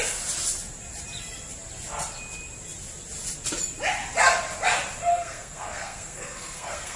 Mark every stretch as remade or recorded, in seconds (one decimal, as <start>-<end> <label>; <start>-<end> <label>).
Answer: 0.0-5.1 recorded; 5.1-7.0 remade